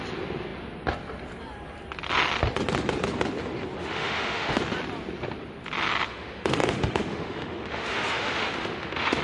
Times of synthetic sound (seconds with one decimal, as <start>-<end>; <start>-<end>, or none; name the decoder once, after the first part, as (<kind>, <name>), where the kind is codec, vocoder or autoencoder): 3.8-4.6 (autoencoder, DAC-VAE); 6.1-9.2